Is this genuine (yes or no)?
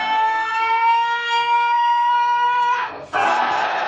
no